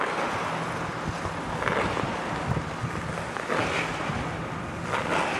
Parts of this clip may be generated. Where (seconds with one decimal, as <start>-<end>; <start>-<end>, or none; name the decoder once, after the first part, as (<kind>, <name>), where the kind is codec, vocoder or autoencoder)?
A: none